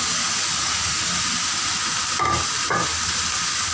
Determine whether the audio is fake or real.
real